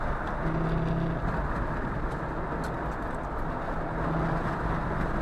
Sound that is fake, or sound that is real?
real